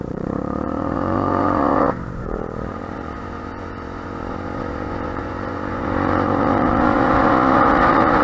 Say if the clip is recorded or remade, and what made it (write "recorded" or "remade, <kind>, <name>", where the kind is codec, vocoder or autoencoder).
remade, vocoder, Vocos